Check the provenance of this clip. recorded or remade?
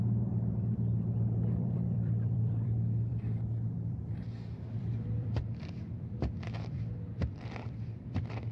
remade